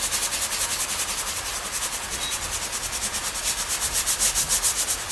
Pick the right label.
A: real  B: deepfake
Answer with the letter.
A